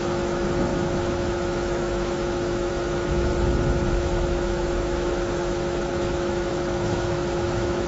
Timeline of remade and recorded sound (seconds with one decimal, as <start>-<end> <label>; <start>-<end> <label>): 0.0-3.3 remade; 3.3-3.9 recorded; 3.9-7.9 remade